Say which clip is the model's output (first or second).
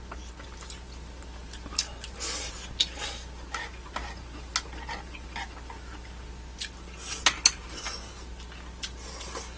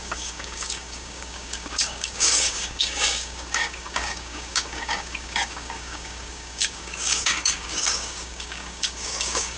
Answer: second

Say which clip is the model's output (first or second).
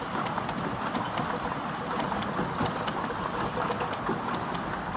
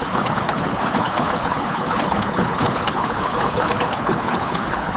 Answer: second